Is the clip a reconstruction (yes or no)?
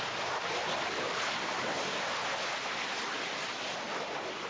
no